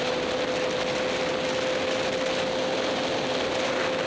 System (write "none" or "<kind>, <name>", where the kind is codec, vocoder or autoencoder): none